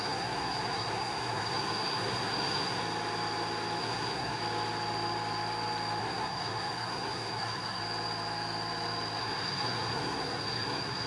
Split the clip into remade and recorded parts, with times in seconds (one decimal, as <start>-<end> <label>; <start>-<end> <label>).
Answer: 0.0-2.8 remade; 2.8-3.8 recorded; 3.8-4.4 remade; 4.4-6.0 recorded; 6.0-7.8 remade; 7.8-9.2 recorded; 9.2-11.1 remade

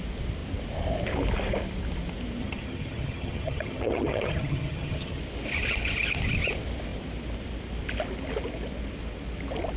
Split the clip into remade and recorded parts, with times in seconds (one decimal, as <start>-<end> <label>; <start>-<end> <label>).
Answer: 0.0-2.4 recorded; 2.4-5.2 remade; 5.2-9.8 recorded

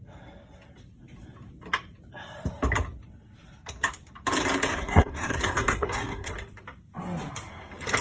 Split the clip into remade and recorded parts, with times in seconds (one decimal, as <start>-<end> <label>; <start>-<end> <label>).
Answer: 0.0-4.7 recorded; 4.7-6.3 remade; 6.3-8.0 recorded

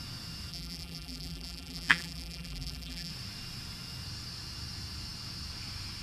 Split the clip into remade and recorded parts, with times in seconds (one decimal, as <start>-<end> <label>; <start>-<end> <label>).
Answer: 0.0-0.5 recorded; 0.5-3.1 remade; 3.1-6.0 recorded

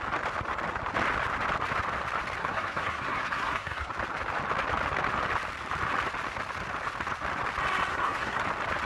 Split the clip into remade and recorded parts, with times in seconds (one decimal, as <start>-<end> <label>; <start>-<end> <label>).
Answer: 0.0-2.4 recorded; 2.4-3.9 remade; 3.9-7.9 recorded; 7.9-8.4 remade; 8.4-8.9 recorded

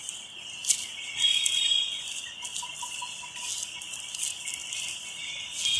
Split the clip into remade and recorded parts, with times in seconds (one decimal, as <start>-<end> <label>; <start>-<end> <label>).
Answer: 0.0-3.0 remade; 3.0-5.8 recorded